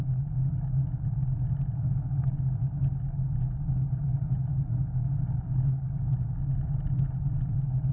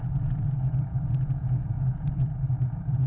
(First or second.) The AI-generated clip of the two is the second